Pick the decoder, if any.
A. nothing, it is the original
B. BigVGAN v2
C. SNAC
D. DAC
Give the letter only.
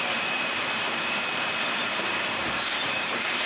B